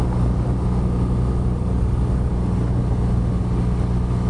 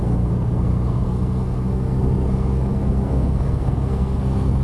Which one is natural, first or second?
first